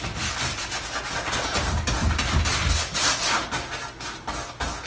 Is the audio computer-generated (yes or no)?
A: no